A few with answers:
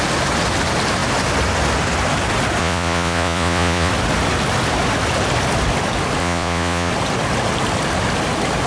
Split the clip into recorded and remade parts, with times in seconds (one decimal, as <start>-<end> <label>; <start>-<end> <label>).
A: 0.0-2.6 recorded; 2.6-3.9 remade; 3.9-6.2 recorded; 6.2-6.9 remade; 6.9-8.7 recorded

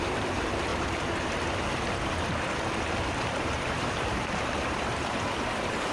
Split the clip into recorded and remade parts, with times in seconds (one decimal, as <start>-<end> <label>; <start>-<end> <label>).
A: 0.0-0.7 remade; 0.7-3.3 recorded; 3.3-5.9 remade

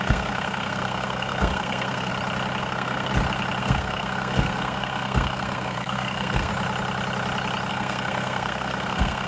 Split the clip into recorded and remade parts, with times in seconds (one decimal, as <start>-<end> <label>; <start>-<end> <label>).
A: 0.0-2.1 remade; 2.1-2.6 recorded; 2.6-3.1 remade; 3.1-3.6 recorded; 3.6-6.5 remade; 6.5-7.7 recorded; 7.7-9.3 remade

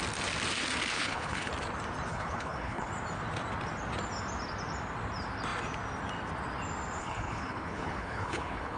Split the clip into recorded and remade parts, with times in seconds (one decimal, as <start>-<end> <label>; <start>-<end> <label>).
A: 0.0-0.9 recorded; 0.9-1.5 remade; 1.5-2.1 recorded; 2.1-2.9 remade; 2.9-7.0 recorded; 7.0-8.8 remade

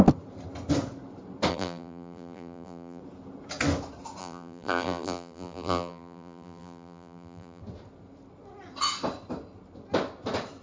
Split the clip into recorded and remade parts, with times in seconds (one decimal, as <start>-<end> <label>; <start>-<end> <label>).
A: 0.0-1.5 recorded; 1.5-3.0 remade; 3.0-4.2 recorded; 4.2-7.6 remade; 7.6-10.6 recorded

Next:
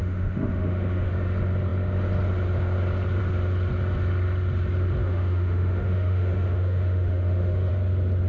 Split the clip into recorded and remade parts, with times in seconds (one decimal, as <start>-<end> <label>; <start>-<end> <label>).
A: 0.0-1.1 remade; 1.1-5.0 recorded; 5.0-7.7 remade; 7.7-8.3 recorded

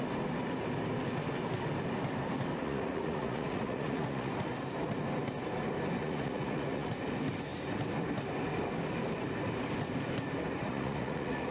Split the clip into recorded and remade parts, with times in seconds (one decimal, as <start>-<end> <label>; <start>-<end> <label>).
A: 0.0-2.6 recorded; 2.6-4.3 remade; 4.3-6.0 recorded; 6.0-6.9 remade; 6.9-10.6 recorded; 10.6-11.5 remade

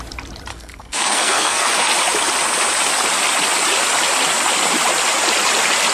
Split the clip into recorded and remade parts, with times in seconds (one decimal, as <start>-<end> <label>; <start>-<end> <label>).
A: 0.0-0.5 recorded; 0.5-1.7 remade; 1.7-5.9 recorded